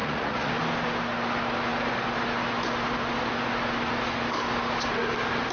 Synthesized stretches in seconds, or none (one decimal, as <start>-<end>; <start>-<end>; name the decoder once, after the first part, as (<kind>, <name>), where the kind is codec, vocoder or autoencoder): 0.0-0.5 (vocoder, Vocos)